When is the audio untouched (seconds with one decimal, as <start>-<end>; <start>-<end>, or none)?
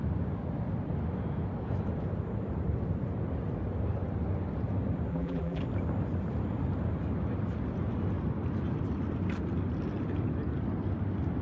0.0-5.1; 5.6-11.4